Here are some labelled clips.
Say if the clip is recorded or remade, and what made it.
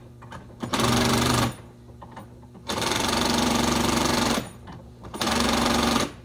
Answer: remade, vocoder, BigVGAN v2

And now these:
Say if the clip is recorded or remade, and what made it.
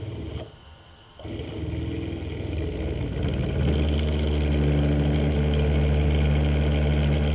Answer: recorded